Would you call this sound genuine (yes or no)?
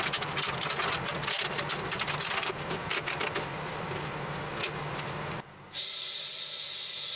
no